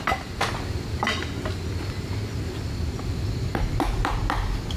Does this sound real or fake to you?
real